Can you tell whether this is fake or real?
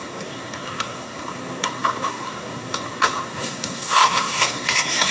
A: fake